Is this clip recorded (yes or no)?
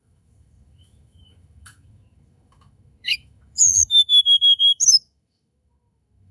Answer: no